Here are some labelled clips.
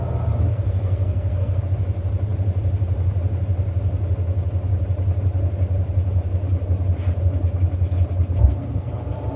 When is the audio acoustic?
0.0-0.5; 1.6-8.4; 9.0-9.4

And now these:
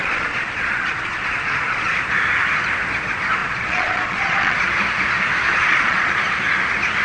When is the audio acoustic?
1.9-3.4; 4.6-5.5; 6.1-7.0

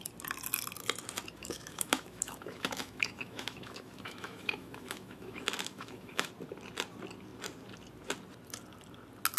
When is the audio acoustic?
0.0-1.4; 6.3-9.4

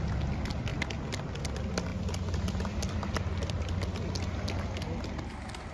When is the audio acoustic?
0.0-5.7

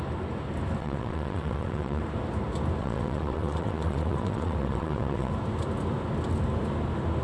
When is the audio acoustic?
0.0-0.8; 2.0-2.8; 5.3-7.2

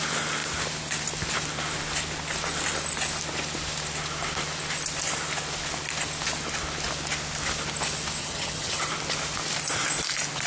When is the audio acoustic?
0.0-8.2; 8.9-10.5

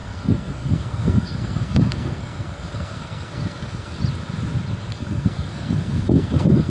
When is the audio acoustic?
4.0-4.9